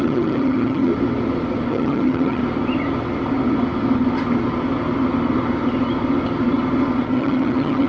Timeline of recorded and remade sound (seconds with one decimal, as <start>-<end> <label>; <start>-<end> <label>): 0.0-0.9 remade; 0.9-1.7 recorded; 1.7-2.4 remade; 2.4-7.1 recorded; 7.1-7.9 remade